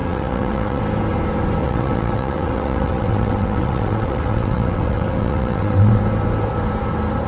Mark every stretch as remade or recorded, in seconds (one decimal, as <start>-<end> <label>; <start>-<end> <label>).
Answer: 0.0-0.8 remade; 0.8-1.6 recorded; 1.6-6.0 remade; 6.0-7.3 recorded